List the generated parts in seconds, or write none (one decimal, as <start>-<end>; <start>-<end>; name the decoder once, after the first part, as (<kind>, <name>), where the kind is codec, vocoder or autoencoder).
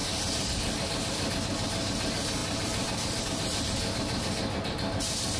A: 2.4-3.2 (vocoder, BigVGAN v2)